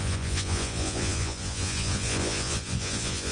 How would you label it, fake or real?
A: fake